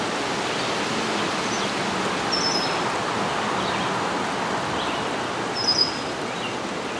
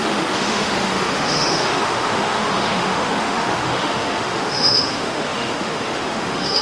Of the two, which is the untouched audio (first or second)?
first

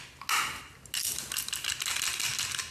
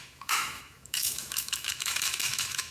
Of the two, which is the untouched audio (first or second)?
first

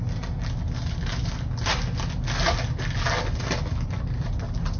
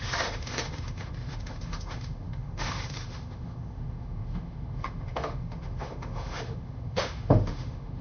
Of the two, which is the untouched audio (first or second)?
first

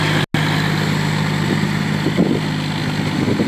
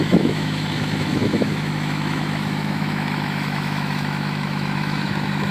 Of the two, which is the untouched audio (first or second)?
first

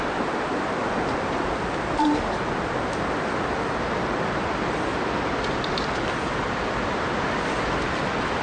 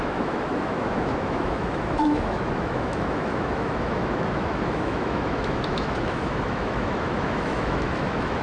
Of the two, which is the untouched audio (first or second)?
first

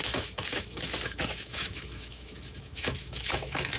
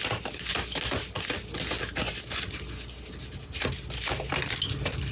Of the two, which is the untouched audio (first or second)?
second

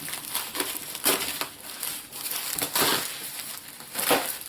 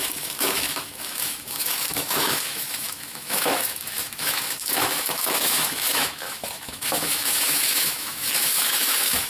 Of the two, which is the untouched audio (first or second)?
first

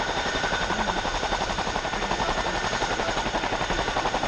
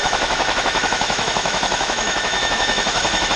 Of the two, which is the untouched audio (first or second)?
first